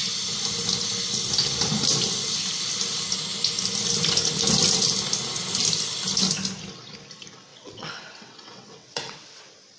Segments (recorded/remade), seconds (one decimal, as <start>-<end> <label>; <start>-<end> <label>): 0.0-7.5 recorded; 7.5-9.4 remade; 9.4-9.8 recorded